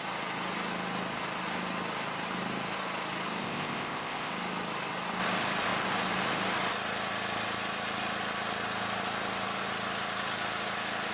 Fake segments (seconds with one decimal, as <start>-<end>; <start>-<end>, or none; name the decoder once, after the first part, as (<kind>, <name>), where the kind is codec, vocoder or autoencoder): 3.4-4.3 (codec, ZipCodec)